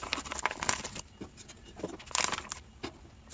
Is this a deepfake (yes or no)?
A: no